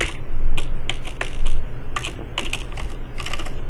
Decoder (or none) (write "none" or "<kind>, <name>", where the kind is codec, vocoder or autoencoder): none